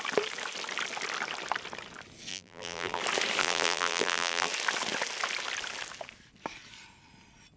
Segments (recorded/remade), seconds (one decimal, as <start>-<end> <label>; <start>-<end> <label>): 0.0-2.3 recorded; 2.3-3.0 remade; 3.0-3.4 recorded; 3.4-4.5 remade; 4.5-7.6 recorded